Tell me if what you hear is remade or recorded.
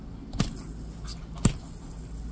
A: recorded